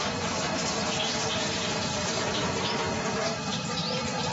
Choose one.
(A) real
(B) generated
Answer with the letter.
B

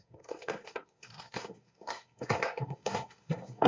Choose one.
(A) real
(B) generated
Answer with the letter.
B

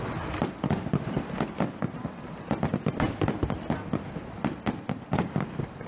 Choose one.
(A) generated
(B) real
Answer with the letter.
B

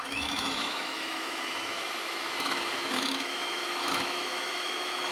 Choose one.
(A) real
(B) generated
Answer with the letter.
B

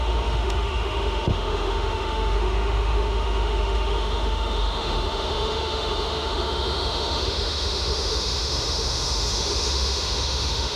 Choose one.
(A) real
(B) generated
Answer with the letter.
B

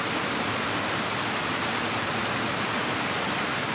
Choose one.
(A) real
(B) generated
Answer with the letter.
A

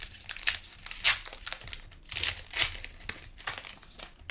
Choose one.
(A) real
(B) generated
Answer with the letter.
A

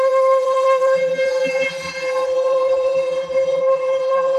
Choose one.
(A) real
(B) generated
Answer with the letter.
B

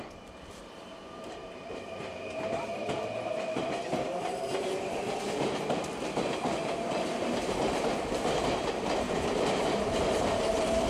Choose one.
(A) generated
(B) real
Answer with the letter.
A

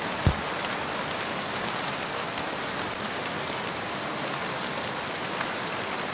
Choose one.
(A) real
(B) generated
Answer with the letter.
A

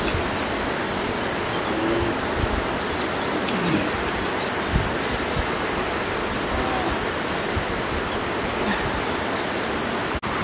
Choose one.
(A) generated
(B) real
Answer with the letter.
B